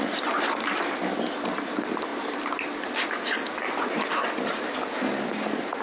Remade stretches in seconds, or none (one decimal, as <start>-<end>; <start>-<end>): none